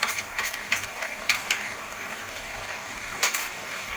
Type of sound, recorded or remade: remade